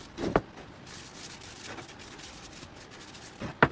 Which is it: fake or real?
real